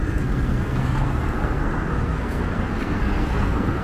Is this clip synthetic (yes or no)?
yes